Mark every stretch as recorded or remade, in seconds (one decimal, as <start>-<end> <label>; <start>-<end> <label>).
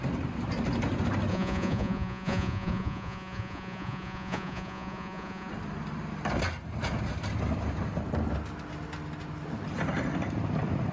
0.0-1.3 recorded; 1.3-5.5 remade; 5.5-10.9 recorded